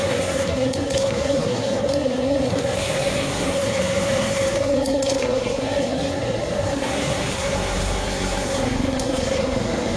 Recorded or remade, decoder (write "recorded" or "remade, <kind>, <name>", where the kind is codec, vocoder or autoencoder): remade, codec, SNAC